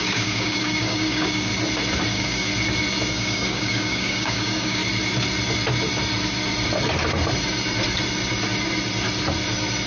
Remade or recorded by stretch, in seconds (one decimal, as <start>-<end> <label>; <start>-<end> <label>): 0.0-1.5 remade; 1.5-2.1 recorded; 2.1-2.5 remade; 2.5-3.1 recorded; 3.1-4.8 remade; 4.8-9.9 recorded